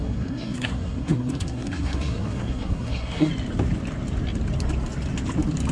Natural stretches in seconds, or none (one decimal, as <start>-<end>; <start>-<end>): 3.3-5.7